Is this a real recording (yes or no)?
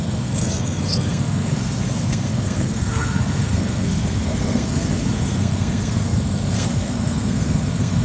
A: no